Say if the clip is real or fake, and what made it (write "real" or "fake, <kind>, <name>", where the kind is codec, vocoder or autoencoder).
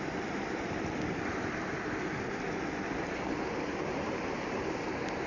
real